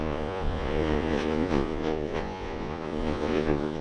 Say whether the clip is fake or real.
fake